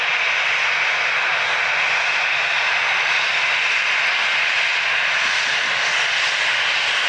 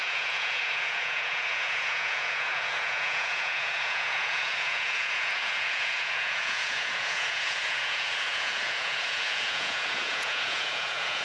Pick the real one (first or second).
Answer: first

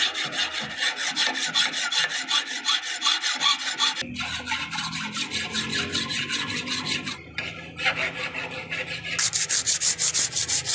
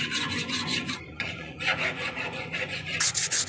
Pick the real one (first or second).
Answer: first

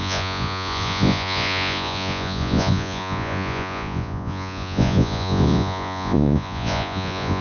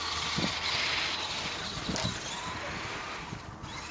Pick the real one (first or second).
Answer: second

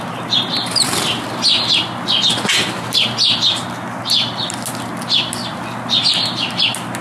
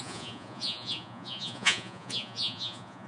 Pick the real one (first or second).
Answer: first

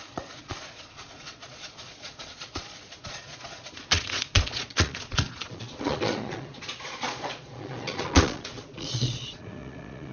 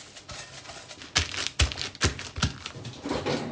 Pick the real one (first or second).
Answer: second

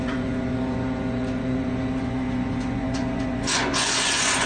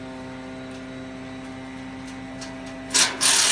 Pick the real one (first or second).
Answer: second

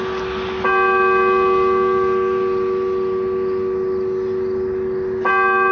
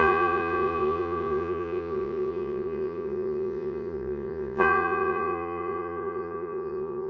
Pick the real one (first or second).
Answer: first